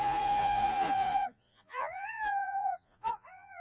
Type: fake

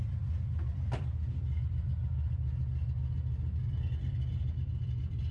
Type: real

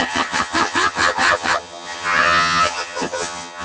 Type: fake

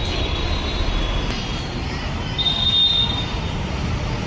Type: real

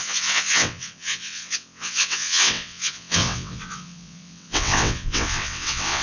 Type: fake